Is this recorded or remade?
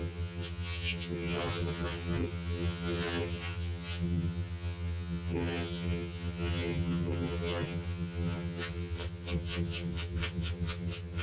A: remade